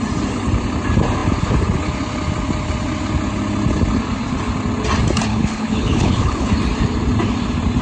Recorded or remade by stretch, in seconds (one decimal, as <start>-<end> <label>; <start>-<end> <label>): 0.0-5.3 recorded; 5.3-6.5 remade; 6.5-7.8 recorded